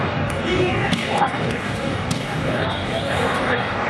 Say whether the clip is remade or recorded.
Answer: remade